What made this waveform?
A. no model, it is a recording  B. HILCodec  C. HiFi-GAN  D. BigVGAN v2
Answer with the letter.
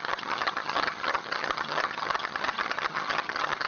C